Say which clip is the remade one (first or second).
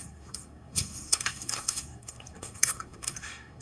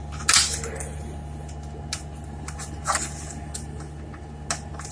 first